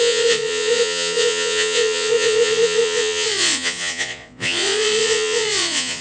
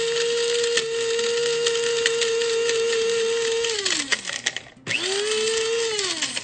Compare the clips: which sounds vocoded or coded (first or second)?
first